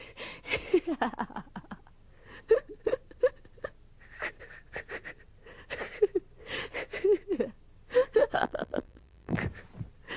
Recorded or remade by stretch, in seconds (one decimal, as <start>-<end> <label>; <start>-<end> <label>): 0.0-8.4 recorded; 8.4-9.4 remade; 9.4-10.2 recorded